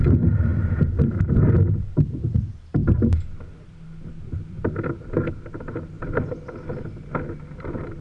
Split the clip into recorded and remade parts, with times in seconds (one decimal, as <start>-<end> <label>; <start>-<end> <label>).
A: 0.0-8.0 recorded